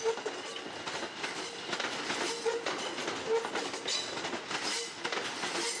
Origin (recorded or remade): recorded